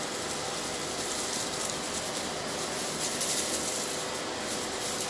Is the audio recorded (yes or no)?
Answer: yes